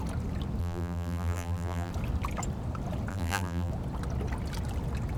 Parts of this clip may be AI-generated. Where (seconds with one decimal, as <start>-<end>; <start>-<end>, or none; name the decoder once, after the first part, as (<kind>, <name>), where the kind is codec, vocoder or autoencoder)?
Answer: 0.6-1.9 (vocoder, BigVGAN v2); 3.1-3.7